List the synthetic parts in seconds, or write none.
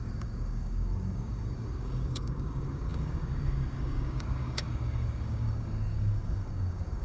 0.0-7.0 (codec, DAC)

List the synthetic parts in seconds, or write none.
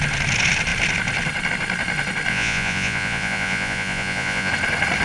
2.3-4.5 (vocoder, Vocos)